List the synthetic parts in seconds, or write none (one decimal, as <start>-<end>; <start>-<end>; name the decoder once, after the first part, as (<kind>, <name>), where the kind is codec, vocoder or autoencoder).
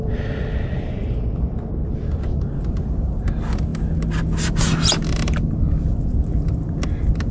none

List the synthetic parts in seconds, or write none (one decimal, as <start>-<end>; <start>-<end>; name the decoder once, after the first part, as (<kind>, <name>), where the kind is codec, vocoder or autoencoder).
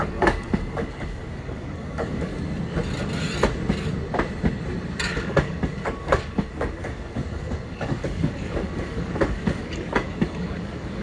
0.0-2.3 (codec, DAC); 5.1-11.0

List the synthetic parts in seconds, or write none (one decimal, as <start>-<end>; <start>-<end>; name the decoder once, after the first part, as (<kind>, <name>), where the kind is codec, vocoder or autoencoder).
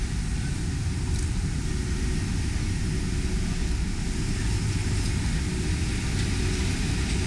none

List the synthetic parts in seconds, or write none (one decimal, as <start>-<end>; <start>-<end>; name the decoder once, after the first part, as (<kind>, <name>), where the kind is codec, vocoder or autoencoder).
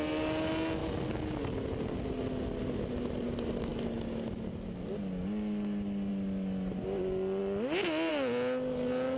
none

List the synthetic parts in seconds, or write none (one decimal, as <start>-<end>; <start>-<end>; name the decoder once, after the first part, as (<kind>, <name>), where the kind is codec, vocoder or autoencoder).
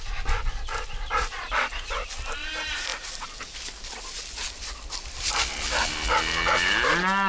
none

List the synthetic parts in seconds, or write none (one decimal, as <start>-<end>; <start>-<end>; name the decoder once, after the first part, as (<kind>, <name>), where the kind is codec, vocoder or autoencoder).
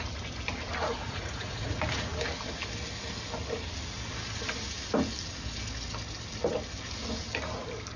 0.8-1.8 (vocoder, Vocos)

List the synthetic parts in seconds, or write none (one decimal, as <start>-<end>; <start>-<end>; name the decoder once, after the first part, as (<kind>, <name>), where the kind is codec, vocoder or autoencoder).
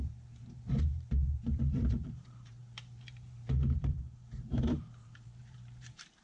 0.0-6.2 (vocoder, BigVGAN v2)